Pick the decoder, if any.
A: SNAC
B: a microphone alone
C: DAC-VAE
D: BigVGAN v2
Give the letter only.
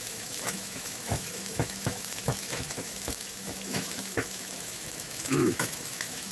C